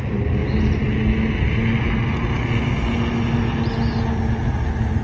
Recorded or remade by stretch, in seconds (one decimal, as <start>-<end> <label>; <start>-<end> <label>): 0.0-5.0 recorded